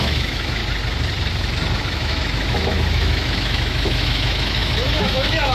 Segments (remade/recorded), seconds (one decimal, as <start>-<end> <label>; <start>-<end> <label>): 0.0-0.6 remade; 0.6-1.8 recorded; 1.8-5.5 remade